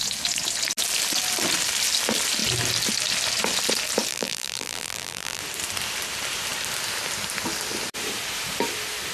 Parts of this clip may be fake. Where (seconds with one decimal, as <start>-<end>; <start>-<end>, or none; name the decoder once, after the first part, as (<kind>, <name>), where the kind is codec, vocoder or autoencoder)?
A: 4.1-5.4 (vocoder, BigVGAN v2)

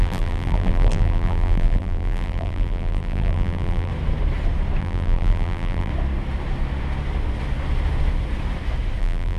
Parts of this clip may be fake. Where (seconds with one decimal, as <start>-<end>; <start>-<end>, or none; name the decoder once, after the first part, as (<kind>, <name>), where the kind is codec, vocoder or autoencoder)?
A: 0.0-3.9 (vocoder, BigVGAN v2); 4.8-5.9; 9.0-9.4